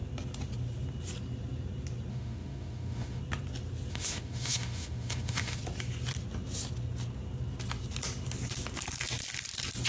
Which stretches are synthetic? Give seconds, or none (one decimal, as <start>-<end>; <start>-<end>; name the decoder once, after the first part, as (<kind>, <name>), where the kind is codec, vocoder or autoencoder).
2.1-3.2 (autoencoder, DAC-VAE); 3.9-5.6